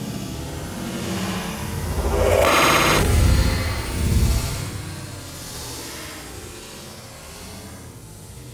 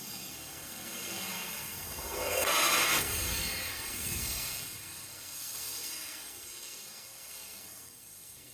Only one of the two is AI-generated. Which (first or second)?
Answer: second